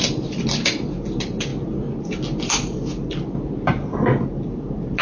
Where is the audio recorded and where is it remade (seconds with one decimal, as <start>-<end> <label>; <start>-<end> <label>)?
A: 0.0-5.0 recorded